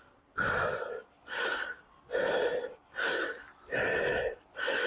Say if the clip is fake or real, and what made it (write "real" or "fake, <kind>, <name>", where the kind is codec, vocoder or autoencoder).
real